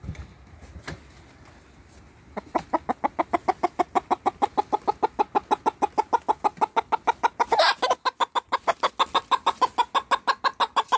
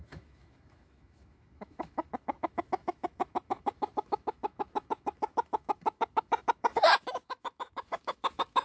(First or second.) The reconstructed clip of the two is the second